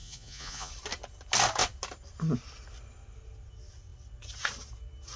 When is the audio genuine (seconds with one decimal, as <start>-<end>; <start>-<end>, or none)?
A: 0.7-5.2